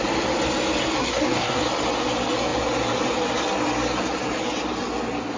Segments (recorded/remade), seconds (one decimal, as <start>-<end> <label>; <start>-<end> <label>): 0.0-1.0 recorded; 1.0-1.6 remade; 1.6-5.4 recorded